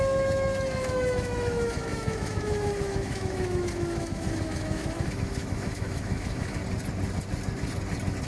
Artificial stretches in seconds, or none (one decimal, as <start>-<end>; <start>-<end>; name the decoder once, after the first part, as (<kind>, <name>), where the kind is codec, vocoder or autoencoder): 0.0-6.6 (autoencoder, DAC-VAE)